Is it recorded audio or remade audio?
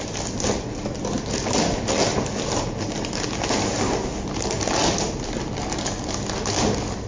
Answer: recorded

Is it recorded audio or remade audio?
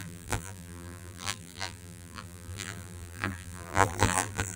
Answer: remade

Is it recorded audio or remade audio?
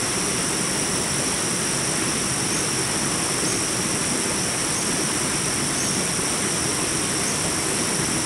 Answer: recorded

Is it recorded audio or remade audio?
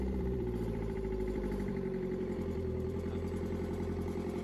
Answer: remade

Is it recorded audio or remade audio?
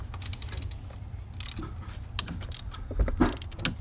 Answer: recorded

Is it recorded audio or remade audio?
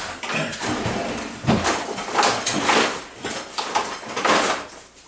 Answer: remade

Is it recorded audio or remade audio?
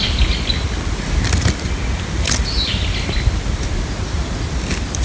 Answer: recorded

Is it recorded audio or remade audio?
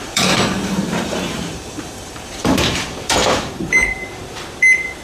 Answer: remade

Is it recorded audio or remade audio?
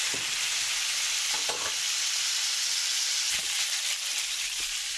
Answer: remade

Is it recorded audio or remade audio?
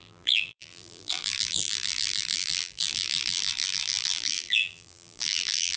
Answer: remade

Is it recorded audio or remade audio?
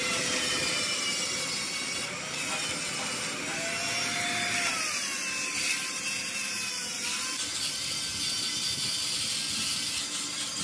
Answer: recorded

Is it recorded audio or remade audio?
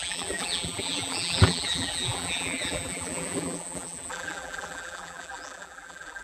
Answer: remade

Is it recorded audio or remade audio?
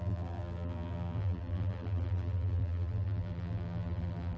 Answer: remade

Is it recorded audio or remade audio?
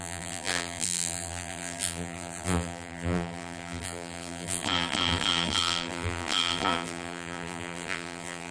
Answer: remade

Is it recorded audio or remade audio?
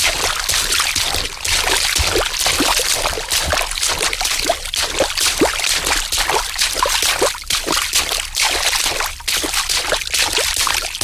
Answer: recorded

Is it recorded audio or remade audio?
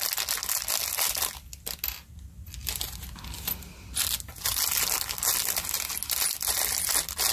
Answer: recorded